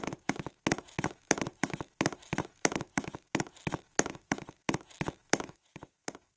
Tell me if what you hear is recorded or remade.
remade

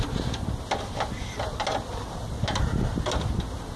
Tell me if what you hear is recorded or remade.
recorded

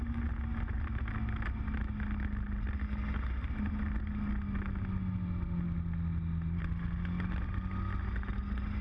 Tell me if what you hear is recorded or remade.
recorded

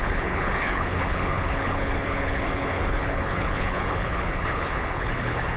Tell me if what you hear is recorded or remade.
remade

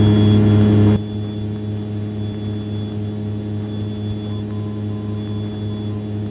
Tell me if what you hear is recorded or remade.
recorded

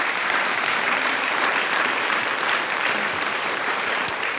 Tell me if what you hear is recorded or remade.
remade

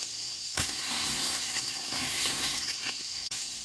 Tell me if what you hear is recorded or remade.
remade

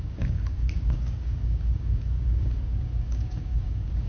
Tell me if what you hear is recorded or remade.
remade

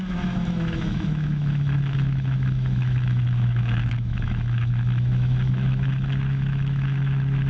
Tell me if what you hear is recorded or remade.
remade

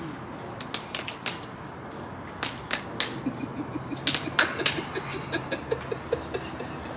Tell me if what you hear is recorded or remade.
recorded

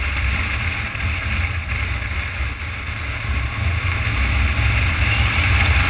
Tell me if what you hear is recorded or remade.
recorded